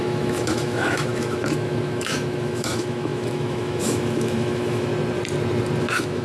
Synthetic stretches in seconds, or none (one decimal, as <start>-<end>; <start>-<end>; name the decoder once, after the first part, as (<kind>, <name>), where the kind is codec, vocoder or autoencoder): 0.0-4.9 (autoencoder, DAC-VAE); 5.8-6.2